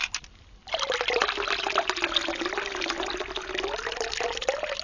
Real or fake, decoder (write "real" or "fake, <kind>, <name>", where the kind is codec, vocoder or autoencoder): real